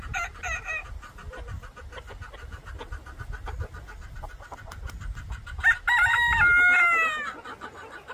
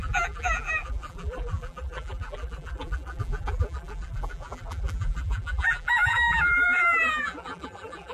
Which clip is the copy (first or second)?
second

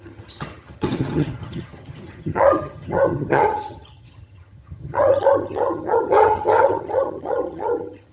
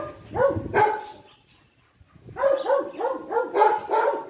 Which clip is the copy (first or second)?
first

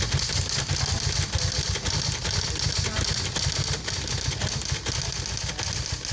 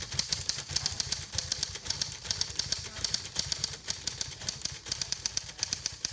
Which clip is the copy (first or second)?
second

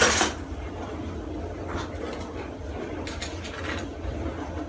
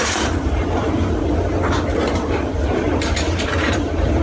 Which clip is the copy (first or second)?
second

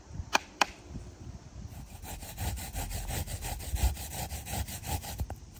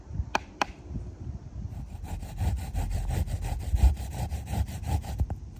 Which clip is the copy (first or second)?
first